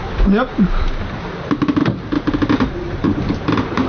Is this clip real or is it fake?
real